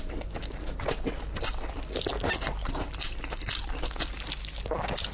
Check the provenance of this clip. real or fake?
real